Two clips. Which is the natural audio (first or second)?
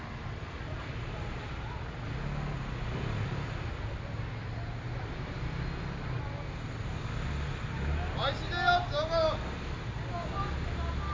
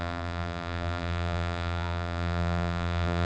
first